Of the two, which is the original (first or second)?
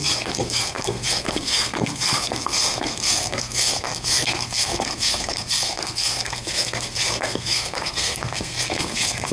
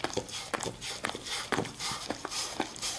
second